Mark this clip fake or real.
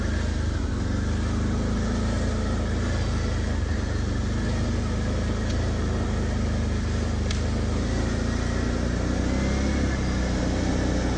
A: real